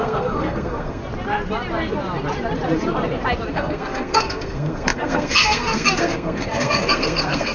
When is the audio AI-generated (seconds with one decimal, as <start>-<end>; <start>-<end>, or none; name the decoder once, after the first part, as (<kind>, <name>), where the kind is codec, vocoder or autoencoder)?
0.0-1.0 (codec, SNAC); 3.5-7.5